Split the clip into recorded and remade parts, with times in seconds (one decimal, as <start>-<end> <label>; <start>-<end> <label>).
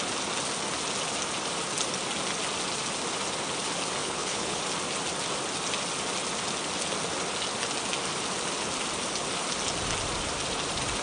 0.0-4.0 recorded; 4.0-4.6 remade; 4.6-11.0 recorded